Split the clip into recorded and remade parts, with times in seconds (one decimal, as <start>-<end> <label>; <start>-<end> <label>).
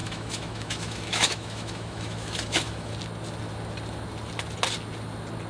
0.0-2.9 remade; 2.9-5.5 recorded